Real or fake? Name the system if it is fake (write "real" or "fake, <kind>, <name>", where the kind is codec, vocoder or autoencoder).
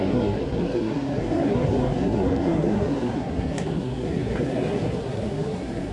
fake, codec, SNAC